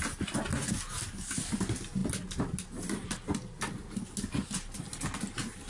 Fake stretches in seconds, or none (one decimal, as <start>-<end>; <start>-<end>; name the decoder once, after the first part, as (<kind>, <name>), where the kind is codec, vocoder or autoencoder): none